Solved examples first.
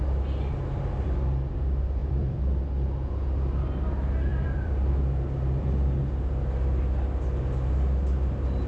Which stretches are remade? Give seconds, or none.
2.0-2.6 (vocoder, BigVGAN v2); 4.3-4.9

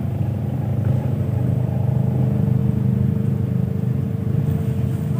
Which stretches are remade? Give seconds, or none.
0.7-1.4 (vocoder, BigVGAN v2); 2.6-4.4